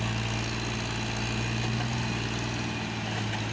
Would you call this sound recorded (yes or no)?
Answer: yes